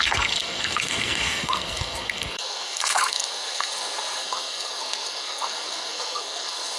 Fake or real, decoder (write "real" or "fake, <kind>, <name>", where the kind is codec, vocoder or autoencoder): fake, codec, SNAC